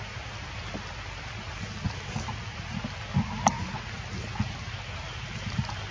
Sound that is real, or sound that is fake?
real